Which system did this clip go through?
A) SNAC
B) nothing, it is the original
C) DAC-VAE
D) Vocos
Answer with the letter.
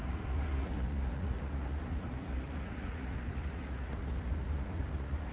D